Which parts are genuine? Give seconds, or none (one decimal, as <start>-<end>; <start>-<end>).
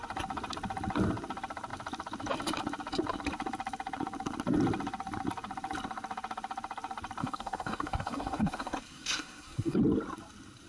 0.0-7.2; 9.8-10.7